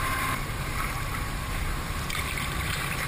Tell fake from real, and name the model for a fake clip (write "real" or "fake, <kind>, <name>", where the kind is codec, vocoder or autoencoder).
fake, vocoder, BigVGAN v2